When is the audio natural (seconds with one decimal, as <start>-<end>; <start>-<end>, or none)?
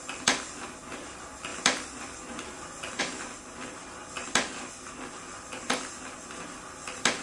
0.0-7.2